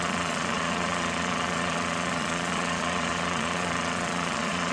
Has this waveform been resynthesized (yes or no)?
yes